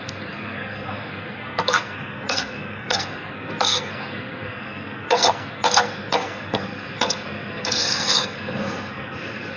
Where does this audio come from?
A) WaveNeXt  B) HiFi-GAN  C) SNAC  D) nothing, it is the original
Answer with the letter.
C